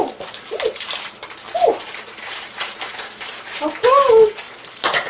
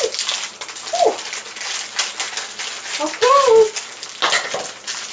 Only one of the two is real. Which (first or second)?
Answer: second